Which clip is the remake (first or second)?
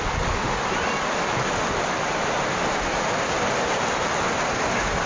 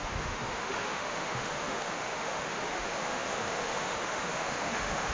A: second